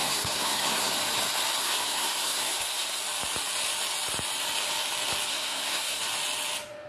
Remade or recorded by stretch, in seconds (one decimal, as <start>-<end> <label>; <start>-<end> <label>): 0.0-0.9 remade; 0.9-1.6 recorded; 1.6-3.0 remade; 3.0-5.3 recorded; 5.3-6.0 remade; 6.0-6.9 recorded